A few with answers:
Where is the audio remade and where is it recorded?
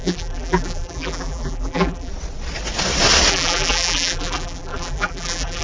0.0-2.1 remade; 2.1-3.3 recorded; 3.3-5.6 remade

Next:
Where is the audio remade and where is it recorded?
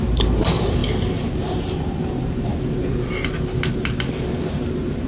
0.0-0.8 remade; 0.8-1.5 recorded; 1.5-2.5 remade; 2.5-4.5 recorded; 4.5-5.1 remade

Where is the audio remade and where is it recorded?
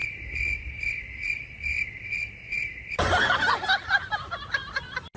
0.0-3.1 remade; 3.1-5.2 recorded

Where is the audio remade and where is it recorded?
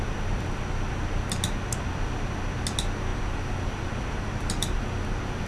0.0-3.1 recorded; 3.1-4.9 remade; 4.9-5.5 recorded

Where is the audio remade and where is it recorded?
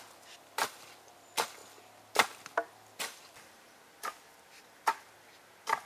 0.0-5.9 recorded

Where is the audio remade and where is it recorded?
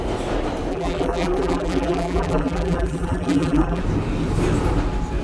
0.0-0.7 recorded; 0.7-3.8 remade; 3.8-5.2 recorded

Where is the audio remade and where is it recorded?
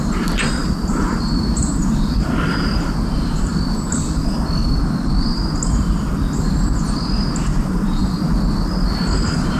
0.0-3.5 remade; 3.5-7.6 recorded; 7.6-8.0 remade; 8.0-8.6 recorded; 8.6-9.6 remade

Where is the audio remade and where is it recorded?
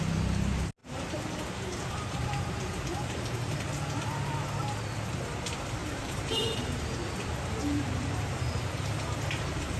0.0-0.8 recorded; 0.8-3.6 remade; 3.6-5.8 recorded; 5.8-9.8 remade